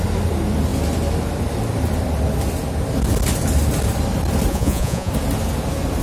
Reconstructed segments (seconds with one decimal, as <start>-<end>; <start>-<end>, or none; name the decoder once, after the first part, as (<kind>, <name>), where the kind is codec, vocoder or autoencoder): 4.5-5.1 (vocoder, Vocos)

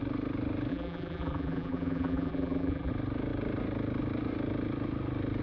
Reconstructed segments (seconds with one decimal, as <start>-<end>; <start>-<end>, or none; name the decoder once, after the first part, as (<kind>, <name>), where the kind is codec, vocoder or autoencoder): 0.7-2.9 (vocoder, BigVGAN v2)

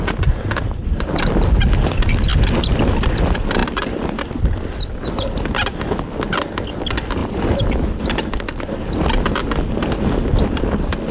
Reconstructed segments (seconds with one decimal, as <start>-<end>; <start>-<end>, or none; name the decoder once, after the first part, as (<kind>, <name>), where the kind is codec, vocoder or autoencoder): 7.2-8.0 (vocoder, BigVGAN v2)

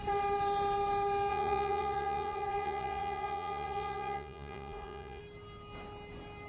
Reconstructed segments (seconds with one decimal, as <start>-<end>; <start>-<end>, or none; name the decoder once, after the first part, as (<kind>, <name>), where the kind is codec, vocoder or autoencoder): 1.3-5.2 (vocoder, Vocos)

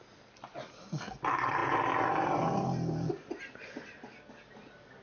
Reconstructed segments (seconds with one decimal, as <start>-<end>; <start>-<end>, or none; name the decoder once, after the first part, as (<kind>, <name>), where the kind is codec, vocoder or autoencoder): none

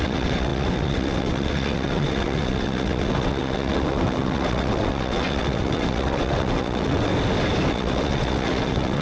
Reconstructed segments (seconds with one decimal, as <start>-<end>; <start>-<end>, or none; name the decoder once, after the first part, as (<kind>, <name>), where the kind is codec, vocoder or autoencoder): 0.0-7.1 (vocoder, WaveNeXt); 7.7-9.0

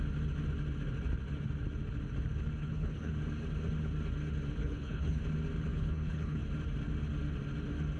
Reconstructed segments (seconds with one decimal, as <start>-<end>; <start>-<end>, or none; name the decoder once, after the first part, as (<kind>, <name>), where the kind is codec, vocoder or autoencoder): 2.6-3.1 (codec, HILCodec); 4.6-5.2; 5.7-6.4